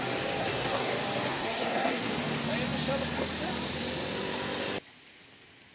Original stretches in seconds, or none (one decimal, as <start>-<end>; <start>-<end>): 0.0-0.4; 0.9-1.3; 2.1-5.7